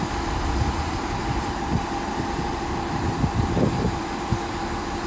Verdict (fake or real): fake